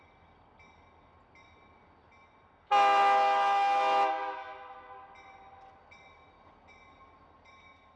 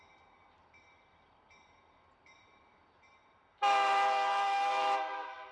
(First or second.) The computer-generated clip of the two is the second